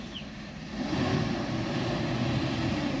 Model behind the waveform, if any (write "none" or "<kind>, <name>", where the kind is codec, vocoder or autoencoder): none